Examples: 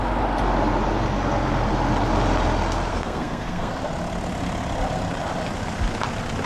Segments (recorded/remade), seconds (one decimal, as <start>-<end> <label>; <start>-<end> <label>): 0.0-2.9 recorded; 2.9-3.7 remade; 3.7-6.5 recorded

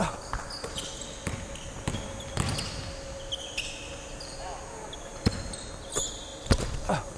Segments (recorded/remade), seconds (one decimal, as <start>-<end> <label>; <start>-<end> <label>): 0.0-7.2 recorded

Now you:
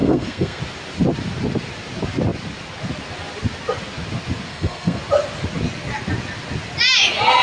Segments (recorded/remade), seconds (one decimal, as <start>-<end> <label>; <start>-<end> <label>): 0.0-0.6 remade; 0.6-4.5 recorded; 4.5-5.0 remade; 5.0-7.4 recorded

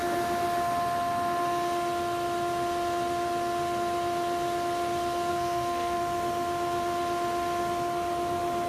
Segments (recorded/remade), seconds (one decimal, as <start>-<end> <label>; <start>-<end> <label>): 0.0-5.3 recorded; 5.3-6.0 remade; 6.0-8.7 recorded

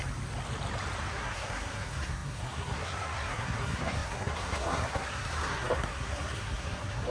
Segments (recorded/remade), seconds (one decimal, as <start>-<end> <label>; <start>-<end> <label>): 0.0-1.1 recorded; 1.1-7.1 remade